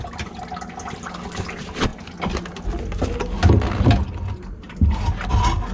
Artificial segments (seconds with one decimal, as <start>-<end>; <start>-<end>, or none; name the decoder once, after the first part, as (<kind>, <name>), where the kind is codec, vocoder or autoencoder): none